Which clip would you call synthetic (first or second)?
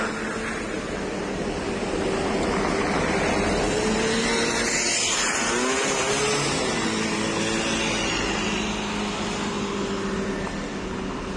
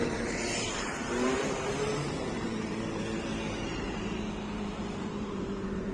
second